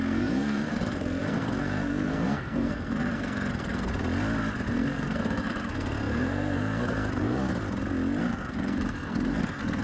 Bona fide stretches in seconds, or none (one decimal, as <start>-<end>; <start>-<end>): 3.9-4.7; 7.5-8.2